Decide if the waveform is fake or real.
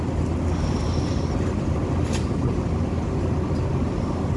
real